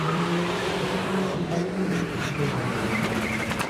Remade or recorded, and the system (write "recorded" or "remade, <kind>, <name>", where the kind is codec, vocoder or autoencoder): remade, vocoder, BigVGAN v2